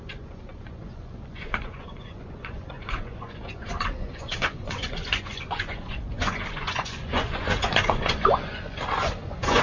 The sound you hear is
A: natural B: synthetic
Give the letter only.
B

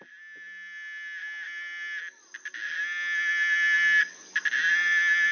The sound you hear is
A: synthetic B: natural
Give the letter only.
B